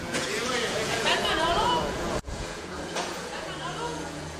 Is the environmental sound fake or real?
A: fake